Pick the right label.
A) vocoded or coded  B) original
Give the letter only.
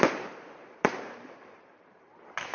A